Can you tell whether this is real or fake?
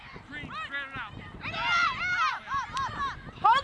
real